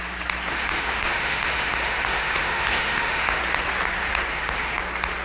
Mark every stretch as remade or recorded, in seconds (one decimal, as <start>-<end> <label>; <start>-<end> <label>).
0.0-0.5 recorded; 0.5-3.4 remade; 3.4-4.3 recorded; 4.3-4.8 remade; 4.8-5.2 recorded